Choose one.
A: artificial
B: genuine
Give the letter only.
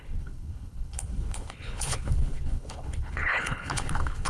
A